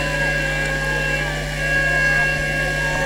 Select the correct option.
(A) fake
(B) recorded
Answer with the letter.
B